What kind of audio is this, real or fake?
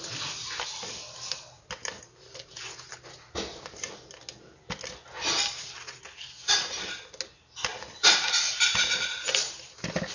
real